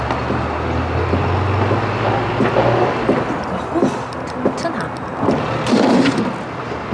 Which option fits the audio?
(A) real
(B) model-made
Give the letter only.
A